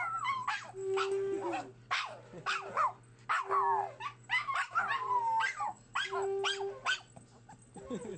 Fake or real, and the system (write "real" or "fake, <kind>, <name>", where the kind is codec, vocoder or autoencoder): real